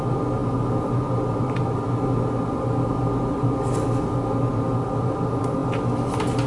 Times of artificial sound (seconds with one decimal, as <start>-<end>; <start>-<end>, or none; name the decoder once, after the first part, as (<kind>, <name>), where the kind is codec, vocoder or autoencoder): none